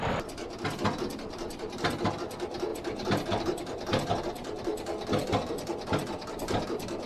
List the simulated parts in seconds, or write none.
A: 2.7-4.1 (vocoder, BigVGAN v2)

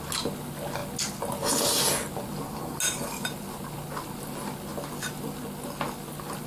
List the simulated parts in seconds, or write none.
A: none

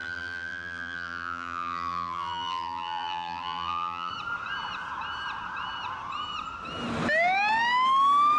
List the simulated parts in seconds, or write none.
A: 0.0-4.1 (vocoder, BigVGAN v2)

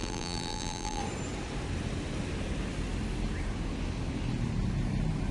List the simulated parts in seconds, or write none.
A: 0.0-1.0 (vocoder, BigVGAN v2)

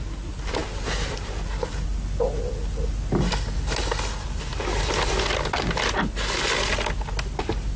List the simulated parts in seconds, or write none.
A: none

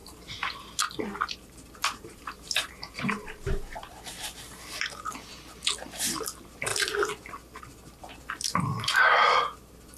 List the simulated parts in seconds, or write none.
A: 0.0-0.7 (vocoder, BigVGAN v2); 1.8-4.6

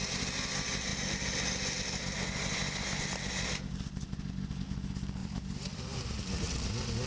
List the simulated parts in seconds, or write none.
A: 5.2-6.6 (vocoder, BigVGAN v2)

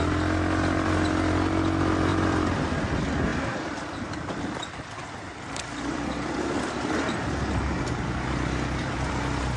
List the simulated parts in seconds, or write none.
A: 2.1-2.8 (vocoder, BigVGAN v2); 3.3-6.9